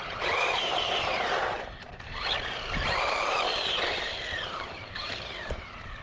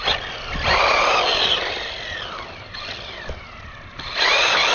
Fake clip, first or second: first